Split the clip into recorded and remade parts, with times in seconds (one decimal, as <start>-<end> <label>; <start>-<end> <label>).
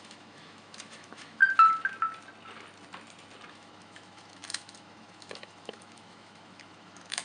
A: 0.0-1.4 remade; 1.4-3.5 recorded; 3.5-7.2 remade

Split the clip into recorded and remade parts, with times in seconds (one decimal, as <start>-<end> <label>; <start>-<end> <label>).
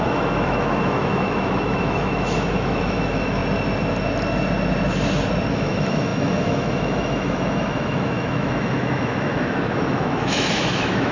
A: 0.0-3.4 remade; 3.4-5.5 recorded; 5.5-11.1 remade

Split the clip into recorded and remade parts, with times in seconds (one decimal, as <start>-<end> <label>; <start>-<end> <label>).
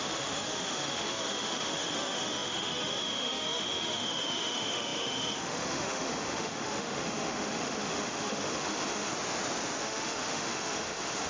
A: 0.0-9.1 remade; 9.1-9.8 recorded; 9.8-11.3 remade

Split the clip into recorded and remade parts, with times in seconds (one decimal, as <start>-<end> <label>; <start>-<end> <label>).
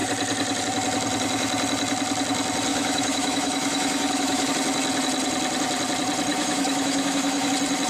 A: 0.0-2.7 recorded; 2.7-4.5 remade; 4.5-6.3 recorded; 6.3-7.5 remade; 7.5-7.9 recorded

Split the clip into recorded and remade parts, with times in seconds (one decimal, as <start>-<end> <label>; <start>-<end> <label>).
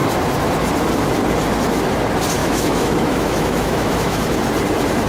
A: 0.0-2.4 recorded; 2.4-4.3 remade; 4.3-5.1 recorded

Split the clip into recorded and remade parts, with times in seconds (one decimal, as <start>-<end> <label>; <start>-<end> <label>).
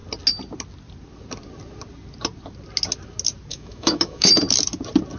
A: 0.0-3.5 recorded; 3.5-4.3 remade; 4.3-5.2 recorded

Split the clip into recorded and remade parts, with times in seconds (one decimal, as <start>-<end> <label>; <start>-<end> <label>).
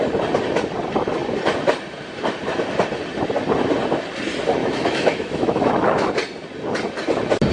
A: 0.0-4.6 recorded; 4.6-6.1 remade; 6.1-7.5 recorded